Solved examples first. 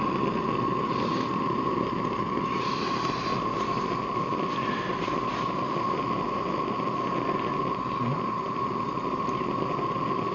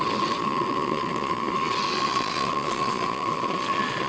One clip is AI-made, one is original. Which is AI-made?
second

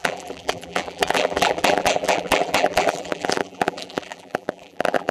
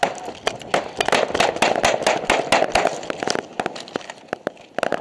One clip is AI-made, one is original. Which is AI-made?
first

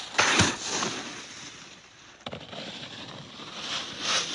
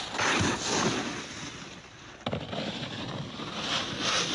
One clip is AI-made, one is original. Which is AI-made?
first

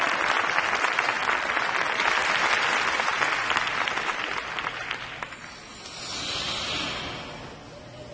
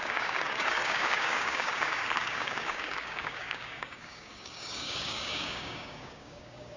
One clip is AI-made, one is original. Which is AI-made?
second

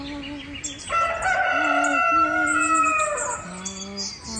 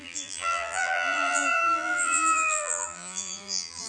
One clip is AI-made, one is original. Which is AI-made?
second